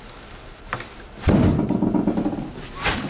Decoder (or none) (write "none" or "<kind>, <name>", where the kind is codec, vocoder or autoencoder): none